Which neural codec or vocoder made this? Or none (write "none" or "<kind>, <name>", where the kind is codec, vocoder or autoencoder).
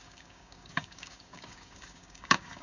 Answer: codec, DAC